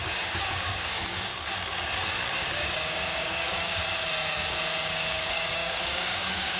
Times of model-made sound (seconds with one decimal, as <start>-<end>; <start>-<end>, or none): 0.0-1.3; 2.4-3.8; 4.9-6.6